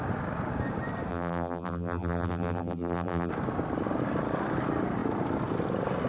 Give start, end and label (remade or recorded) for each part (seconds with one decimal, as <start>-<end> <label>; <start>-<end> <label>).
0.0-1.1 recorded; 1.1-3.3 remade; 3.3-6.1 recorded